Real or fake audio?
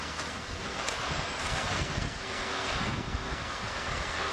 fake